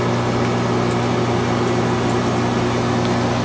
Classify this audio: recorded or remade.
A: recorded